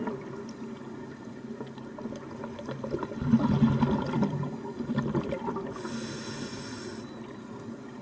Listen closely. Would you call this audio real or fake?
real